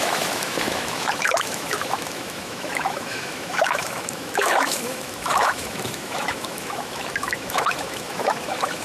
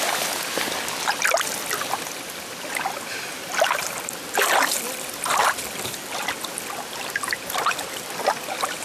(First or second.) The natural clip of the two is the second